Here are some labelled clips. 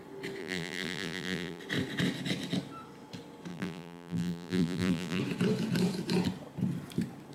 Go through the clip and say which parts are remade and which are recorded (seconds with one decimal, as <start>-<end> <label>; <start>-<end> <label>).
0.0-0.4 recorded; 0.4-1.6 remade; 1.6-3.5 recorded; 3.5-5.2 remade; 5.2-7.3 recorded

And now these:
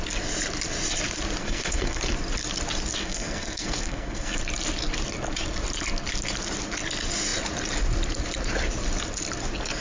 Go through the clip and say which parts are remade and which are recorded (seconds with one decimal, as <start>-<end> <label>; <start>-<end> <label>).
0.0-1.4 recorded; 1.4-2.0 remade; 2.0-3.0 recorded; 3.0-4.4 remade; 4.4-9.8 recorded

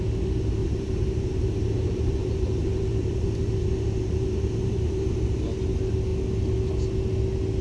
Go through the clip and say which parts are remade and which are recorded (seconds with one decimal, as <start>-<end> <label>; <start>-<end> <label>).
0.0-0.6 recorded; 0.6-5.2 remade; 5.2-7.6 recorded

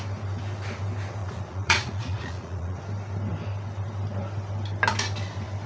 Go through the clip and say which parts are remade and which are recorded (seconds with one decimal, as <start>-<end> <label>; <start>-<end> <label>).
0.0-1.2 recorded; 1.2-2.8 remade; 2.8-5.7 recorded

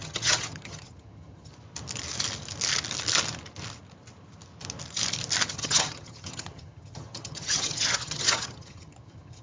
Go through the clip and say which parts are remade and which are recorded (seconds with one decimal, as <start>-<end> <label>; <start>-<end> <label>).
0.0-1.5 remade; 1.5-5.5 recorded; 5.5-9.4 remade

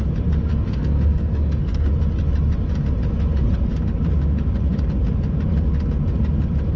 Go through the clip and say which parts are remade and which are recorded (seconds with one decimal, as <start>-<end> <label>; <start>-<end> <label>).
0.0-0.5 recorded; 0.5-1.9 remade; 1.9-6.8 recorded

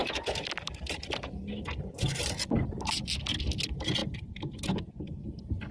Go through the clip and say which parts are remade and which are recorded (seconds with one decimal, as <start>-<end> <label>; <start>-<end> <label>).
0.0-4.0 recorded; 4.0-5.7 remade